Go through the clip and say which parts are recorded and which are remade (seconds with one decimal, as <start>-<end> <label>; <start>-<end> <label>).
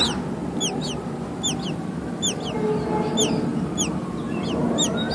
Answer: 0.0-5.1 recorded